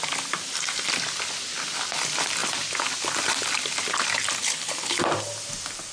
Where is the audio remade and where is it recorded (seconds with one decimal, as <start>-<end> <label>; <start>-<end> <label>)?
0.0-4.4 recorded; 4.4-5.0 remade; 5.0-5.9 recorded